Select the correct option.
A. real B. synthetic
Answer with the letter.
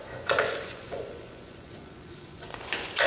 B